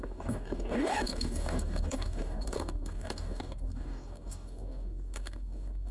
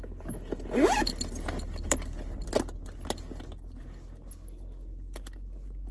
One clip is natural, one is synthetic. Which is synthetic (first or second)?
first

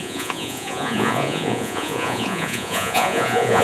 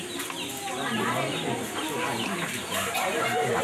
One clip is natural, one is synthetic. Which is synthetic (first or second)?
first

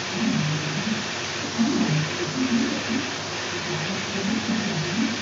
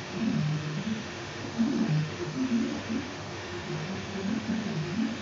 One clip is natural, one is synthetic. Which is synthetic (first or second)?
second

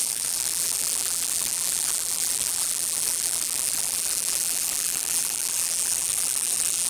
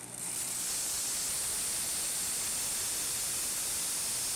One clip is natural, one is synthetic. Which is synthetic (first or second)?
first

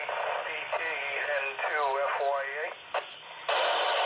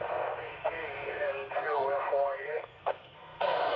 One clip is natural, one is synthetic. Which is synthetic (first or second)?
second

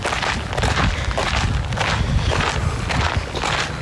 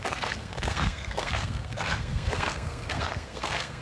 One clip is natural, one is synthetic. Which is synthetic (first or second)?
second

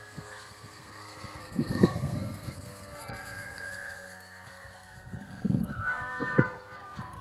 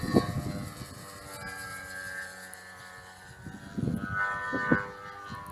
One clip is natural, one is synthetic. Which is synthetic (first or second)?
first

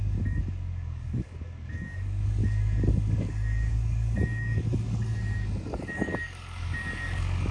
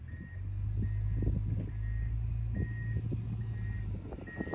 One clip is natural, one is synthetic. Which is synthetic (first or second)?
first